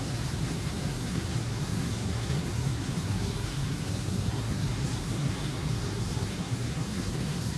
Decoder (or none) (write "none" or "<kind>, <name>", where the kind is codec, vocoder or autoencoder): codec, SNAC